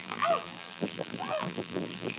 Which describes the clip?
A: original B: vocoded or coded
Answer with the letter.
B